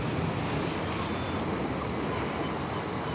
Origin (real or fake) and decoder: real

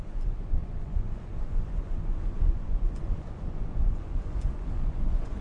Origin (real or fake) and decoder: fake, vocoder, Vocos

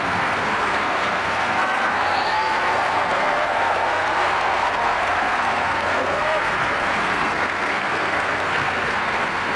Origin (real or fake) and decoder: fake, codec, SNAC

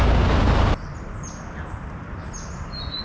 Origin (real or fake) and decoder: real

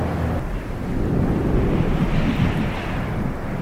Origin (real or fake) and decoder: real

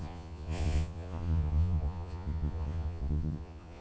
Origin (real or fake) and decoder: fake, vocoder, Vocos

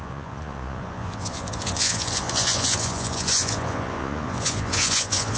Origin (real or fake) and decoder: fake, vocoder, Vocos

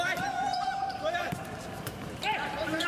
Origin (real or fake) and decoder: fake, vocoder, BigVGAN v2